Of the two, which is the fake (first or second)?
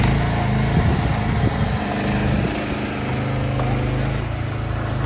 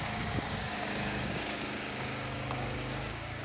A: second